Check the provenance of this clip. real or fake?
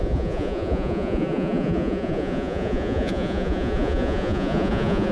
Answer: fake